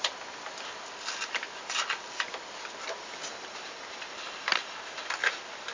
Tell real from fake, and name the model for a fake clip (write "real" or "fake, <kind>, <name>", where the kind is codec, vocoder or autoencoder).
real